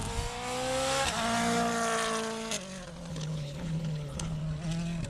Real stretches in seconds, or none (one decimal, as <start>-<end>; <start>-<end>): 0.0-3.1; 4.4-5.1